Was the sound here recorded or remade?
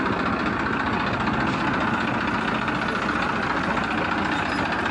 recorded